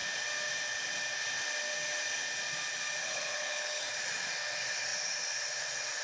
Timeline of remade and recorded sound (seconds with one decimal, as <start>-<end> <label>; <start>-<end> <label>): 0.0-3.0 recorded; 3.0-3.8 remade; 3.8-6.0 recorded